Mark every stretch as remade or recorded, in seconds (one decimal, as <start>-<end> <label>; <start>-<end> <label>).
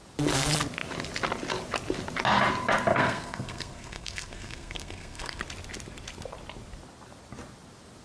0.0-2.9 recorded; 2.9-5.4 remade; 5.4-8.0 recorded